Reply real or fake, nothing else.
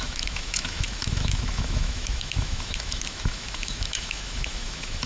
fake